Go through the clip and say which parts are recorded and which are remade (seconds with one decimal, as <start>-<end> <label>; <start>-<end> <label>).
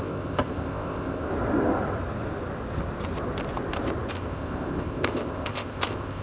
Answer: 0.0-1.3 remade; 1.3-4.1 recorded; 4.1-6.2 remade